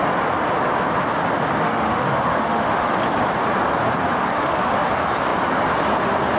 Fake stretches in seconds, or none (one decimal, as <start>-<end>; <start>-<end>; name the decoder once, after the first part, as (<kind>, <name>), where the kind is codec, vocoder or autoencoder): 1.6-3.0 (autoencoder, DAC-VAE); 4.3-4.8